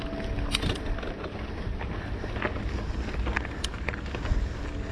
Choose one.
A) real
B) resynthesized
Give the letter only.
A